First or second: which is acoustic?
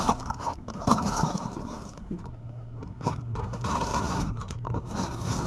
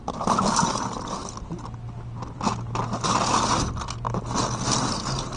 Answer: second